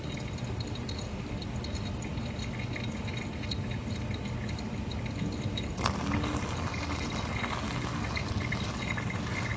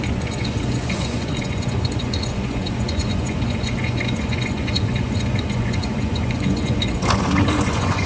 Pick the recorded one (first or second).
first